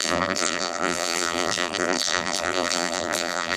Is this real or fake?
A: fake